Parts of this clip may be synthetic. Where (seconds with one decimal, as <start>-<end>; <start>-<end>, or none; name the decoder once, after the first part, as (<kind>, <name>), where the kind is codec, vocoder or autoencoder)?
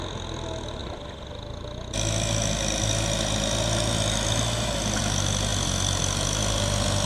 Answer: none